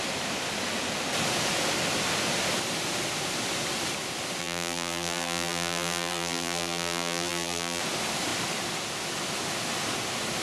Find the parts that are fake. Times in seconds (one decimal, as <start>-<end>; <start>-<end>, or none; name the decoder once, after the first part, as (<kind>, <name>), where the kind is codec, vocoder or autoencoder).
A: 4.4-7.8 (vocoder, BigVGAN v2)